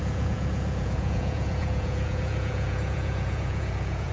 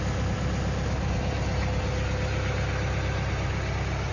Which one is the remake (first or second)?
first